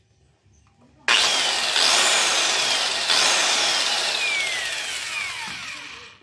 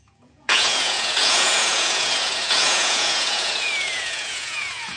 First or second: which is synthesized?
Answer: second